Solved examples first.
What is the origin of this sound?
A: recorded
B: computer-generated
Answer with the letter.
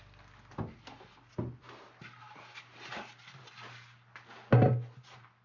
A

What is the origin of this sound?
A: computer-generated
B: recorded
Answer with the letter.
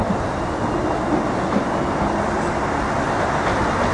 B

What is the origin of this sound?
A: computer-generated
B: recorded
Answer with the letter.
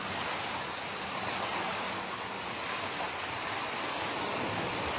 B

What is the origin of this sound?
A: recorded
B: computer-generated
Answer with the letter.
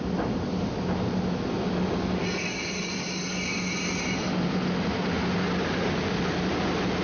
A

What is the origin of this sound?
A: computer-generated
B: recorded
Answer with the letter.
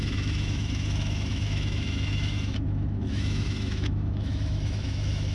A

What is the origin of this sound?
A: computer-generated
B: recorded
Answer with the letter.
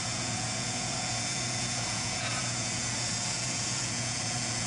A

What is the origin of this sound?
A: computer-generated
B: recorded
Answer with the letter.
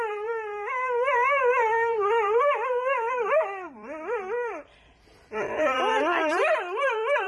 A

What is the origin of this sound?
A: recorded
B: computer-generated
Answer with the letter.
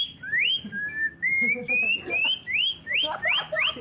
A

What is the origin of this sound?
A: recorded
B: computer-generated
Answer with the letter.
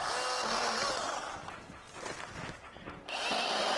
A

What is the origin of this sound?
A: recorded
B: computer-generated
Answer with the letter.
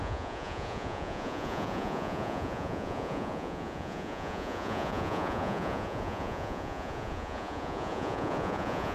B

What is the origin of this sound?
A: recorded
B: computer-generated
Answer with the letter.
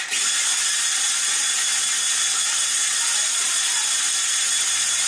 A